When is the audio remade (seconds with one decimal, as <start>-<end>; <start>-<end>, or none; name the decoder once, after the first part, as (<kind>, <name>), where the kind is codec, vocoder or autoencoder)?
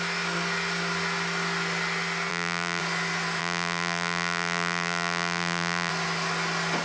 2.3-2.8 (vocoder, BigVGAN v2); 3.4-5.9